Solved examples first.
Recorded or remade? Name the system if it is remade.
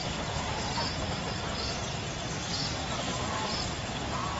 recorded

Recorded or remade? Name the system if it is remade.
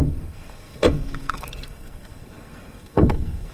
remade, codec, SNAC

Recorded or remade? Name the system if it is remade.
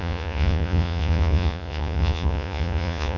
remade, vocoder, Vocos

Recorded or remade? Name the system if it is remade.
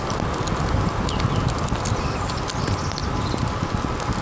recorded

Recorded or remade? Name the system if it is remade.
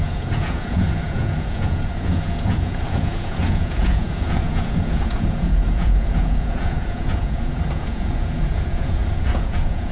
remade, vocoder, Vocos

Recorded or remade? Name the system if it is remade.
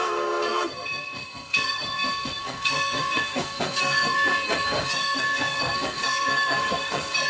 remade, codec, SNAC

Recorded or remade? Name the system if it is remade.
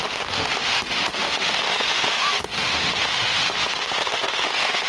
remade, autoencoder, DAC-VAE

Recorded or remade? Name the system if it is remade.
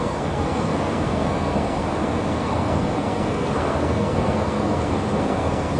remade, codec, SNAC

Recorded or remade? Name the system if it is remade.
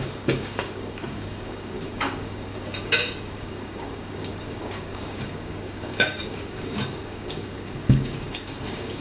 remade, codec, DAC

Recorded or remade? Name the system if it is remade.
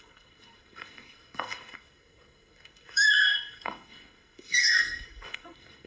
remade, codec, SNAC